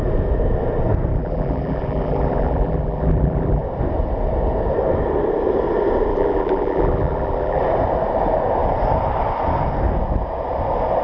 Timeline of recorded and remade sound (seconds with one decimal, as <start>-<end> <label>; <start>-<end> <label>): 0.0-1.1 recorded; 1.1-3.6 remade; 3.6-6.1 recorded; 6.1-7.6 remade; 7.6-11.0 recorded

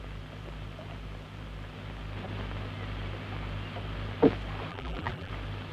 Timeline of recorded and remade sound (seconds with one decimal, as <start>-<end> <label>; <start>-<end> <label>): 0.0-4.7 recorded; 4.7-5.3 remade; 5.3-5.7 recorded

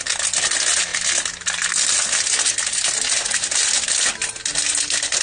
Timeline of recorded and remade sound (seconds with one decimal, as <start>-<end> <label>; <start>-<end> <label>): 0.0-5.2 recorded

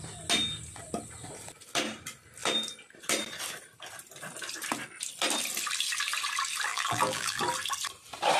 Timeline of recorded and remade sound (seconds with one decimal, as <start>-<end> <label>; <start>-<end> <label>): 0.0-6.7 recorded; 6.7-7.4 remade; 7.4-8.4 recorded

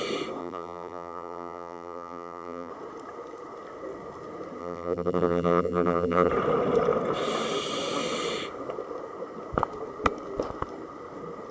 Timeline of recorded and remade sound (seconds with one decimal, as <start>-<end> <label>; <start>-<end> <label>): 0.0-0.4 recorded; 0.4-2.7 remade; 2.7-4.6 recorded; 4.6-6.3 remade; 6.3-11.5 recorded